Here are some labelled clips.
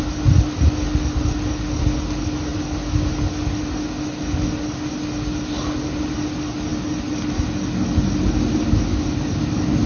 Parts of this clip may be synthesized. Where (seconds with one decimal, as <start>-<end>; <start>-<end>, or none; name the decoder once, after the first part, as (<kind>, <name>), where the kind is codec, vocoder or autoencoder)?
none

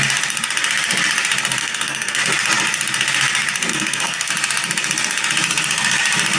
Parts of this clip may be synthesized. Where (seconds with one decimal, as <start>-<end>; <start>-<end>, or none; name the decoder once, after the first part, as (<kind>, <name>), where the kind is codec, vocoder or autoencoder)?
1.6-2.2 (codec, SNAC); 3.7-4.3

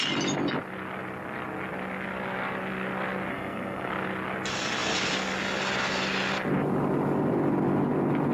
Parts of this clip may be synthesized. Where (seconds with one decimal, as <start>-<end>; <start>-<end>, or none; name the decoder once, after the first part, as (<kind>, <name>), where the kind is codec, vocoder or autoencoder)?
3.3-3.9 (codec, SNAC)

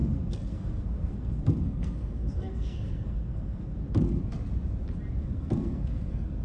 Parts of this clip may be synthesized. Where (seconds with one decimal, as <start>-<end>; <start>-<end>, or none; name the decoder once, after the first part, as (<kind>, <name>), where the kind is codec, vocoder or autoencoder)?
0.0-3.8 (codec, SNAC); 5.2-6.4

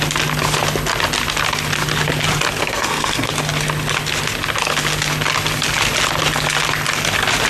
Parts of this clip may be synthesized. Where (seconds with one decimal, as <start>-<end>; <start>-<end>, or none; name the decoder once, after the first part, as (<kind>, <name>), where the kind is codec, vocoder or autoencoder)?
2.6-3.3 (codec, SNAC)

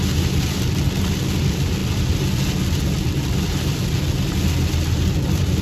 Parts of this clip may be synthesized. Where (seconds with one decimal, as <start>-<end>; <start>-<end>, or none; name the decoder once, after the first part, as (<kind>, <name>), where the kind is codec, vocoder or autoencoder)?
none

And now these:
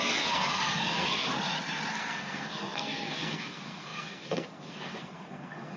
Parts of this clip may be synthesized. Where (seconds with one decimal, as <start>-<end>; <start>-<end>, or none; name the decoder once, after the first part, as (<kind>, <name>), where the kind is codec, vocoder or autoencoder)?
0.0-1.3 (codec, SNAC); 1.9-5.8

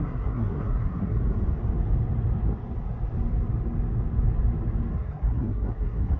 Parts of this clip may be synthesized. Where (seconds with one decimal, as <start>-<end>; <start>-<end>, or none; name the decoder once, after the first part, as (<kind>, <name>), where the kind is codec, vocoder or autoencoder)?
0.0-1.2 (codec, SNAC); 4.9-6.2